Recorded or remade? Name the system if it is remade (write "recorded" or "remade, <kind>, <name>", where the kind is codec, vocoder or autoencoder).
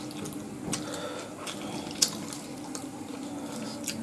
recorded